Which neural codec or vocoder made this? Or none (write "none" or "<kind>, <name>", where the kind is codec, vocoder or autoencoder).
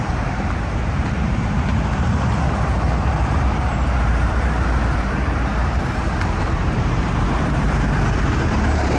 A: vocoder, BigVGAN v2